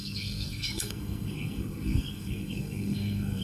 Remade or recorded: remade